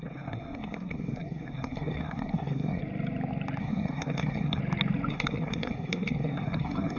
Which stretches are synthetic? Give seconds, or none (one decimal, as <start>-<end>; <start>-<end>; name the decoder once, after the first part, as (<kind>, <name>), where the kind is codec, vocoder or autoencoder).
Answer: 0.0-2.8 (codec, SNAC); 3.6-4.6; 5.1-7.0

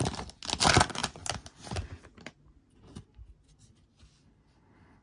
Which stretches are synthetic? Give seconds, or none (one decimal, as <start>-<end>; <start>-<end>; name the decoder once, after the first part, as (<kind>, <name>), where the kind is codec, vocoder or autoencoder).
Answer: none

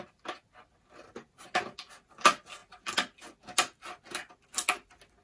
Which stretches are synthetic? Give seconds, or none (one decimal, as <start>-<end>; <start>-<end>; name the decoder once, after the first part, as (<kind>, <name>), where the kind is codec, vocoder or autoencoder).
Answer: none

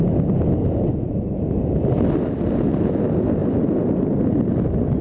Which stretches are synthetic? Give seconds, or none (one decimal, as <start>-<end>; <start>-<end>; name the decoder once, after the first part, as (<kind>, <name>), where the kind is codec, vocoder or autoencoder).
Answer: none